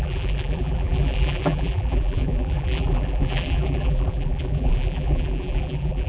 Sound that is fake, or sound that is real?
fake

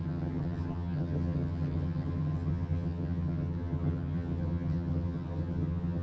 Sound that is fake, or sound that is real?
fake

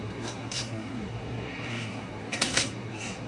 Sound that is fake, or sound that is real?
fake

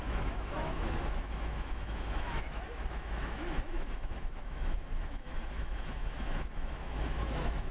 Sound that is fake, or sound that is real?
fake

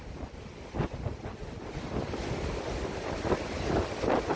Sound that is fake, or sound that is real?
real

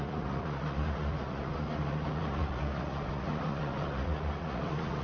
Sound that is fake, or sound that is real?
fake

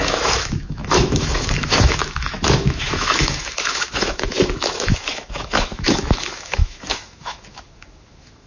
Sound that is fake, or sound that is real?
fake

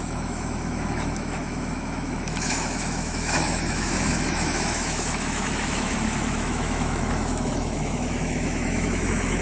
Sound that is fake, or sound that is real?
fake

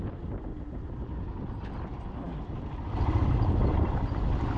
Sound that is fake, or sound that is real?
real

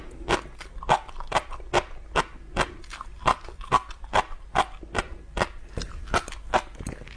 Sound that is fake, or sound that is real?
real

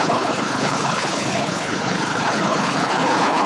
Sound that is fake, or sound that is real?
fake